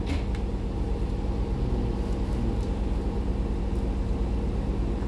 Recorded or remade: recorded